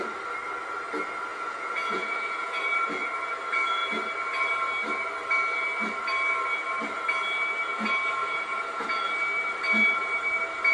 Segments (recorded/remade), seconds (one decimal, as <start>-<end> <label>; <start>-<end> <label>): 0.0-1.3 recorded; 1.3-2.7 remade; 2.7-8.2 recorded; 8.2-9.0 remade; 9.0-10.7 recorded